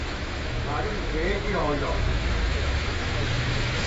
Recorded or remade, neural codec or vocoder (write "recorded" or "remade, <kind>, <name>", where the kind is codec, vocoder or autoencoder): remade, autoencoder, DAC-VAE